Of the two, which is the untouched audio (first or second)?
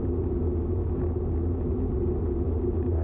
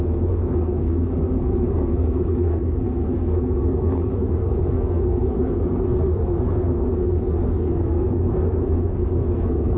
first